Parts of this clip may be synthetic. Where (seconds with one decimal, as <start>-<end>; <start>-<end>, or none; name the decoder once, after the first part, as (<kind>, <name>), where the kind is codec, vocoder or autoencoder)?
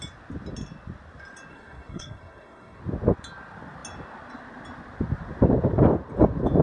1.5-2.8 (codec, SNAC)